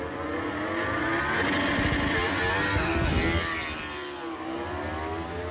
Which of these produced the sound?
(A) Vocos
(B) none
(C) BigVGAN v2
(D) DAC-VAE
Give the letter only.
B